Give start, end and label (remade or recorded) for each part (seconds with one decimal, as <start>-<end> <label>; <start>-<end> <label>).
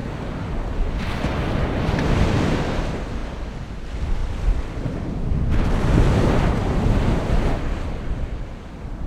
0.0-9.1 recorded